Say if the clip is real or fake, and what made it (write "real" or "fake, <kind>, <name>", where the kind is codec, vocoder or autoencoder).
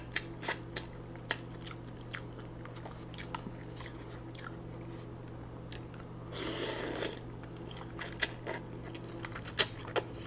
real